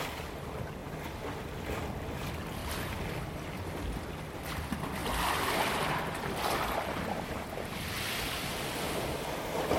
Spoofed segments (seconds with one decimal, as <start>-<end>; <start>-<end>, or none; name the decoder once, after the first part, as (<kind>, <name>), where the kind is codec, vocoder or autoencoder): none